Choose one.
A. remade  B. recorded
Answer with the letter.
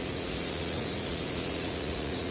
A